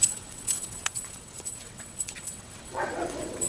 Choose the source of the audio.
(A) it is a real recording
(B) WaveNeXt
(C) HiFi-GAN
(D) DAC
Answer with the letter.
B